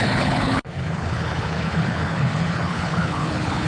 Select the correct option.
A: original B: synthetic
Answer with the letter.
B